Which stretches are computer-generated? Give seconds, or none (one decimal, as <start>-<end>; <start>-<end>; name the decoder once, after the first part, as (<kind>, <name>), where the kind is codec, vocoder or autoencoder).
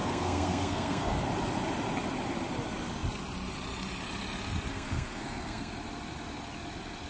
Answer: 0.0-1.2 (codec, SNAC); 4.7-5.7